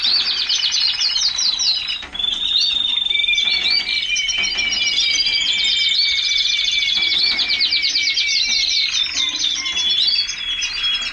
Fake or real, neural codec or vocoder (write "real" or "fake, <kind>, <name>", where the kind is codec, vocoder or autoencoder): real